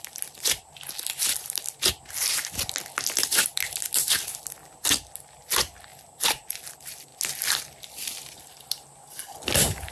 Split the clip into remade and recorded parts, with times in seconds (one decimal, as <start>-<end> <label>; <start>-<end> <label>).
0.0-5.9 recorded; 5.9-6.6 remade; 6.6-9.9 recorded